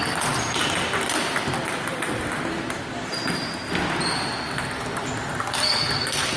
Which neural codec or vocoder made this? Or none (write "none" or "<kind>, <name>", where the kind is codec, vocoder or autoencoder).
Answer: none